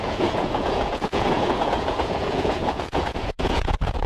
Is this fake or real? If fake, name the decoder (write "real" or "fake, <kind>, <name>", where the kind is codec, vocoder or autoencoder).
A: fake, vocoder, Vocos